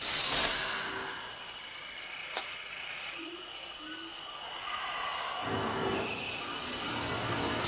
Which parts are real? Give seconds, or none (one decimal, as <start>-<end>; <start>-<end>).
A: 0.0-2.2; 3.5-7.7